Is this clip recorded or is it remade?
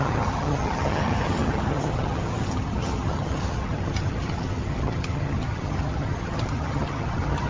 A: remade